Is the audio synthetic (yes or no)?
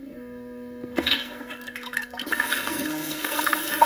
yes